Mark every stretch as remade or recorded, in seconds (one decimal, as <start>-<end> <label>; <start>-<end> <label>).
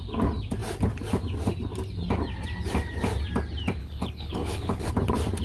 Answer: 0.0-3.8 recorded; 3.8-4.9 remade; 4.9-5.4 recorded